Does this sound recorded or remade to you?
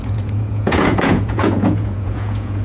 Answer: remade